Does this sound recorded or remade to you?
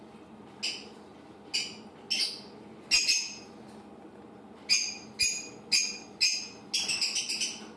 recorded